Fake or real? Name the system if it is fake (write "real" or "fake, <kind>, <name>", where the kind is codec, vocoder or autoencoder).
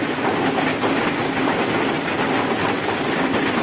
real